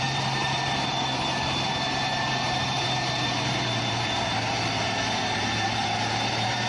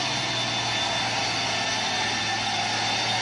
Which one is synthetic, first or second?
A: first